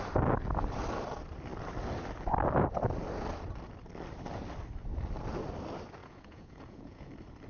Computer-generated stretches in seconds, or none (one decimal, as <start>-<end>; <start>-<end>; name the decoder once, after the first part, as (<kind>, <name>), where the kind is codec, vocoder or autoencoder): 6.0-7.1 (vocoder, Vocos)